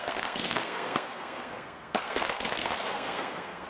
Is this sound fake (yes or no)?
yes